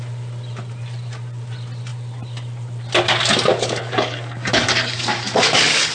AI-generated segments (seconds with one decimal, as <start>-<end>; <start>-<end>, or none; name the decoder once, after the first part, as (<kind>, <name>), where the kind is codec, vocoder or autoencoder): 3.5-5.9 (codec, DAC)